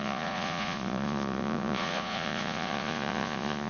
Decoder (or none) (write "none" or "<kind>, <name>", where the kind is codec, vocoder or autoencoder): vocoder, Vocos